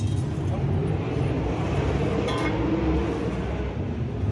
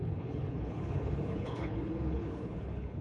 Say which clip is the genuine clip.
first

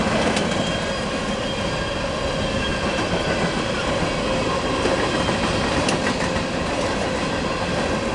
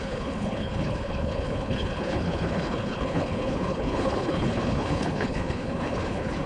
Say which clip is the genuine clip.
first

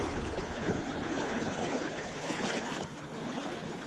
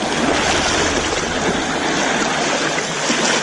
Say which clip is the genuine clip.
second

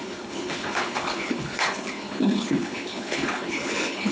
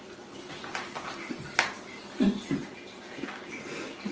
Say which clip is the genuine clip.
second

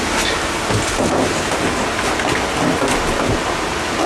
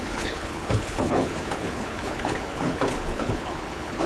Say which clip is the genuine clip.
first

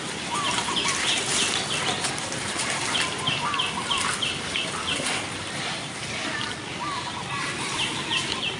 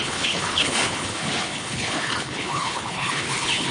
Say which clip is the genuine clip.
first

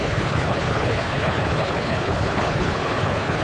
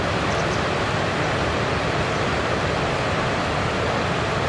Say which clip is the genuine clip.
second